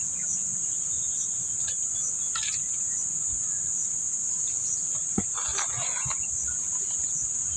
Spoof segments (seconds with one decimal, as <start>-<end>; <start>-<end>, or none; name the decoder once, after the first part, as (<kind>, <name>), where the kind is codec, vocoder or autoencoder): none